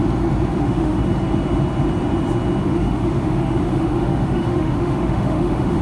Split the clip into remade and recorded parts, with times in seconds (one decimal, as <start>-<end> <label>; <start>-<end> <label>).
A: 0.0-0.5 recorded; 0.5-1.0 remade; 1.0-2.6 recorded; 2.6-5.8 remade